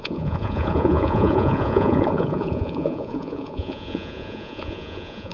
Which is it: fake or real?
fake